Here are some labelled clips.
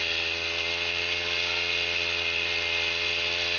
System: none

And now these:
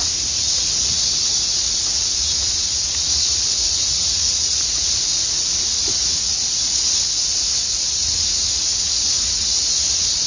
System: vocoder, Vocos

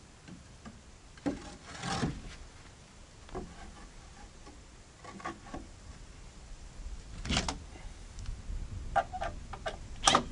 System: none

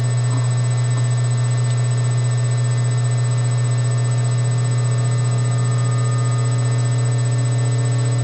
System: none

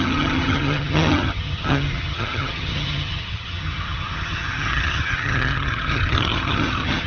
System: vocoder, HiFi-GAN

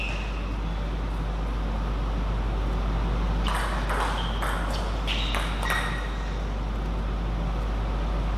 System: none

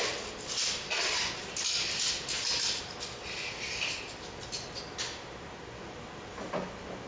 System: none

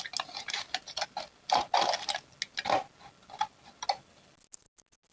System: none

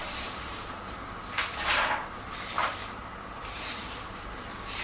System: vocoder, BigVGAN v2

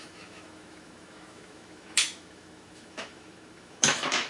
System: autoencoder, DAC-VAE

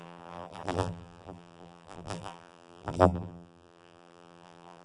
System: vocoder, BigVGAN v2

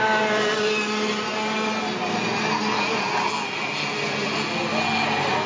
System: none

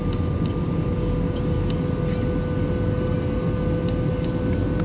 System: none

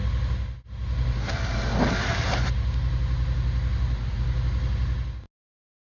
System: none